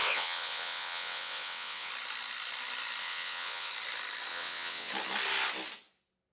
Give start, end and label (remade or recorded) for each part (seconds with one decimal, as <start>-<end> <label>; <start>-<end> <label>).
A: 0.0-1.9 remade; 1.9-3.0 recorded; 3.0-3.7 remade; 3.7-4.3 recorded; 4.3-4.9 remade; 4.9-6.3 recorded